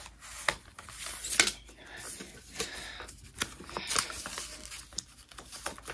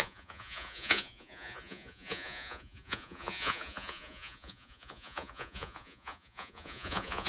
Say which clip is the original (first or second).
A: first